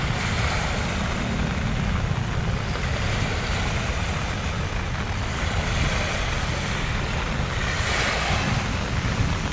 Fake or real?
real